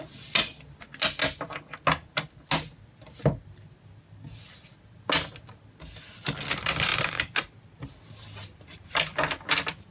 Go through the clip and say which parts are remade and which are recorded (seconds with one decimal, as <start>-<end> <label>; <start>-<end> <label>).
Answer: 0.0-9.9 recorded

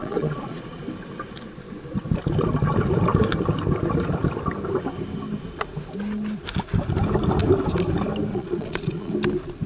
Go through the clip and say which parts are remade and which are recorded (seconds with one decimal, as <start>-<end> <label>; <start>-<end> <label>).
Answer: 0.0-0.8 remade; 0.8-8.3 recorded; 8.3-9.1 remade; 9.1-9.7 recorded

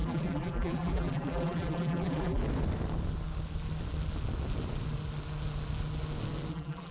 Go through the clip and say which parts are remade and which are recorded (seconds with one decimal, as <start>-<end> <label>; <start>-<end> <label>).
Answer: 0.0-2.4 remade; 2.4-6.5 recorded; 6.5-6.9 remade